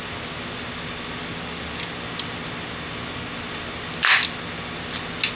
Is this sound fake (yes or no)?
no